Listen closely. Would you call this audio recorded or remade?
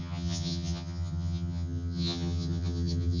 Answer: remade